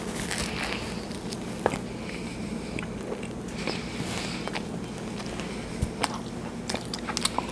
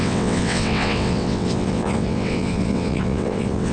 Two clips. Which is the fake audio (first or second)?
second